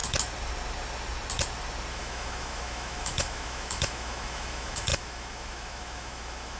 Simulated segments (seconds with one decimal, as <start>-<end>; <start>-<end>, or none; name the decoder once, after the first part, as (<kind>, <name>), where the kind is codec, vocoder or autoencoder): 1.9-6.6 (autoencoder, DAC-VAE)